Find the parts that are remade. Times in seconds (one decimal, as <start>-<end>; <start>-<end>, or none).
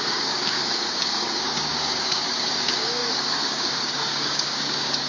0.0-5.1